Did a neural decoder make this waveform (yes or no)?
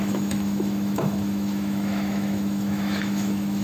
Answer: yes